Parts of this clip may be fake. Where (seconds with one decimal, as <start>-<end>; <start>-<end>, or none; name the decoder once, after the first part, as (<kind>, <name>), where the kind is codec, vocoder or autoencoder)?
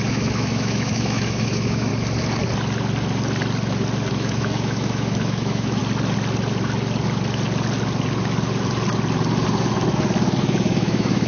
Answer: 0.0-1.9 (autoencoder, DAC-VAE); 4.1-5.8; 10.4-11.3